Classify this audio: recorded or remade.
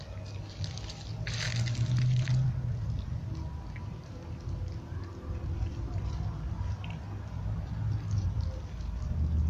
recorded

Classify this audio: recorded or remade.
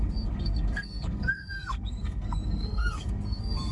remade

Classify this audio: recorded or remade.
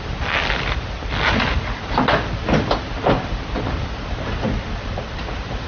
recorded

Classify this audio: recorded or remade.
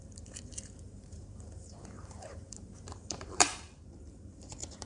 remade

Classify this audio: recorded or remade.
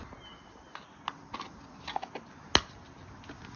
recorded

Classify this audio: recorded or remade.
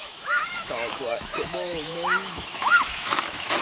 remade